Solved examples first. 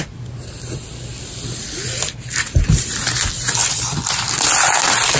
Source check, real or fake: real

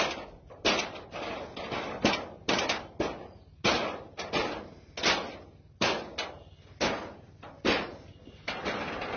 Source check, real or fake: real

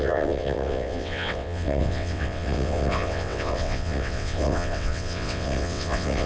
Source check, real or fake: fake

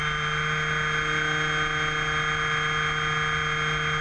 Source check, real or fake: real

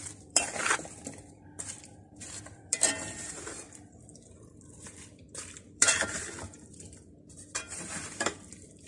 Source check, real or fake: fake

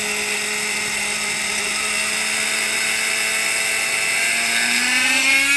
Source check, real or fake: real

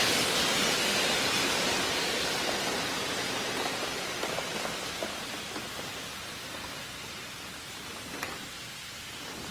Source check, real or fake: real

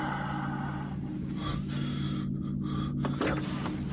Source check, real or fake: real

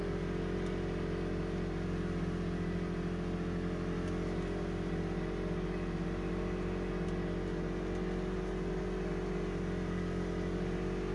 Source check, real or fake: real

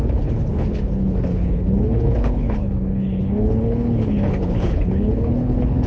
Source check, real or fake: fake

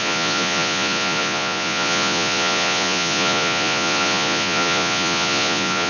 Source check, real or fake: fake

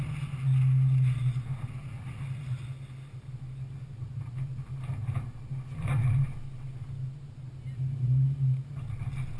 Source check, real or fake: real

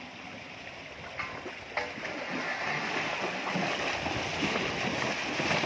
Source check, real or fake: real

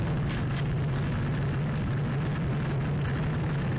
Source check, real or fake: real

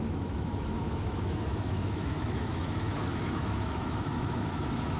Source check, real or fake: fake